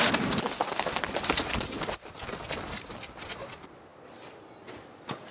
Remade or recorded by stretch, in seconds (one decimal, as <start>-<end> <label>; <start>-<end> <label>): 0.0-5.3 recorded